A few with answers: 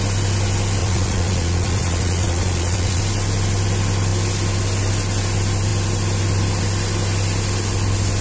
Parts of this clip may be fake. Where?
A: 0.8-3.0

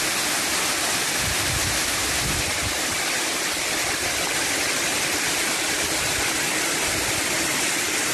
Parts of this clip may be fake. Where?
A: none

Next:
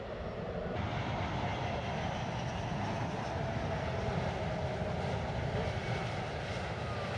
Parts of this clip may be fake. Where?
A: none

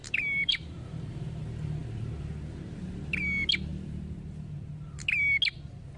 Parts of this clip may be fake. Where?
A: 0.0-1.4

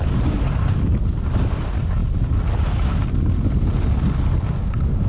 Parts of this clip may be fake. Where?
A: none

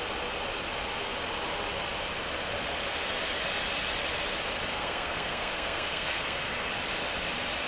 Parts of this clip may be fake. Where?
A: 4.7-6.7

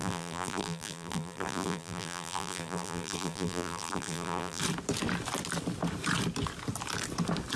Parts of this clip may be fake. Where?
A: 0.0-4.6